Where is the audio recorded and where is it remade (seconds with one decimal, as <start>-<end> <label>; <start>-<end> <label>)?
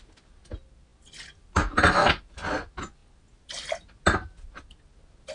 0.0-5.3 recorded